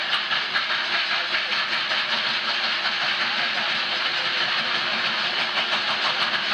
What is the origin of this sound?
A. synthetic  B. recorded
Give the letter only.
B